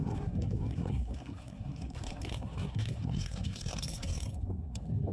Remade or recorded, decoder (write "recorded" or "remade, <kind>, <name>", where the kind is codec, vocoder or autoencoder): remade, codec, SNAC